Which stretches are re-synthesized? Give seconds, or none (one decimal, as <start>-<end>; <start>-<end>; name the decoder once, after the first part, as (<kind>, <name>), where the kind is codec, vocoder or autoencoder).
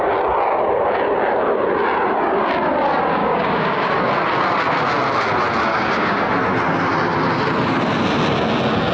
3.2-3.9 (codec, DAC); 5.7-6.3